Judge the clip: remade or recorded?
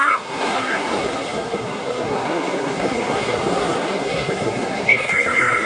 remade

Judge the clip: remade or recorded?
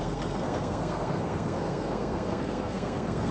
remade